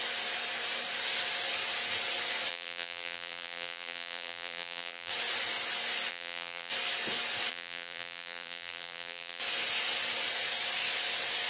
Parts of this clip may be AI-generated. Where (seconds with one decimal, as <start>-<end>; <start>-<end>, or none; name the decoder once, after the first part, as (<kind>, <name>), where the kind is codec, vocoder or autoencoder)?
2.5-5.1 (vocoder, BigVGAN v2); 6.1-6.7; 7.5-9.4